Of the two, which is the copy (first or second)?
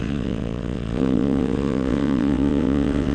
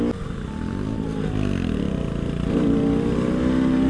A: first